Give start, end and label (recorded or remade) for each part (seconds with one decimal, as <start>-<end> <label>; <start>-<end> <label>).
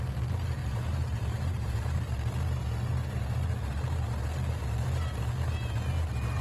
0.0-0.6 recorded; 0.6-2.1 remade; 2.1-6.4 recorded